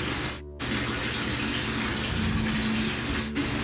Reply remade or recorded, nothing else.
recorded